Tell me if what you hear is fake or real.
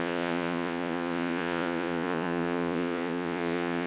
fake